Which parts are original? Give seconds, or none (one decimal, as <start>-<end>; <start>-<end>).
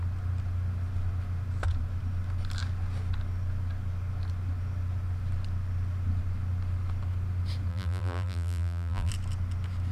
0.0-7.7; 9.1-9.9